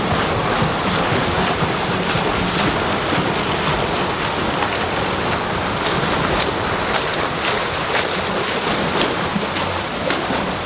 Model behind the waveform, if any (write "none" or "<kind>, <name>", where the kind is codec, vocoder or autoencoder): none